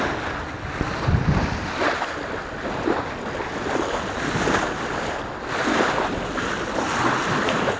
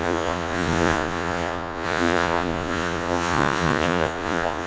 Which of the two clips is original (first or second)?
first